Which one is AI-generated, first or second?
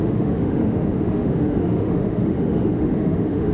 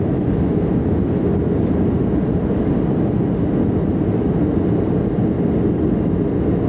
first